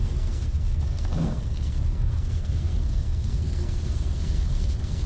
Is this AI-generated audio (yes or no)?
yes